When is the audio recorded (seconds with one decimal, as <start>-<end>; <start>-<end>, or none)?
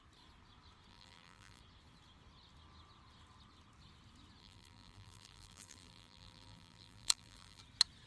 0.0-0.9; 1.6-4.4; 7.6-8.1